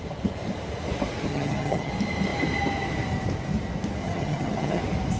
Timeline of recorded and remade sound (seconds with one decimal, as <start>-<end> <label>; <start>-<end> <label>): 0.0-1.3 recorded; 1.3-1.9 remade; 1.9-4.0 recorded; 4.0-4.8 remade; 4.8-5.2 recorded